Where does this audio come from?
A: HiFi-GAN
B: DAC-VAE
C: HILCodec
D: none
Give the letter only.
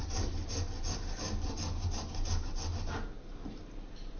D